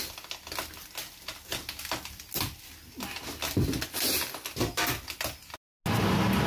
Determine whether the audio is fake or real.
real